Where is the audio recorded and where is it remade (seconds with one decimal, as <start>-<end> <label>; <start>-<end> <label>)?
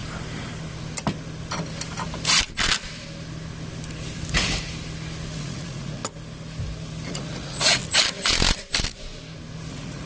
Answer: 0.0-5.3 recorded; 5.3-6.0 remade; 6.0-7.1 recorded; 7.1-7.8 remade; 7.8-9.7 recorded; 9.7-10.1 remade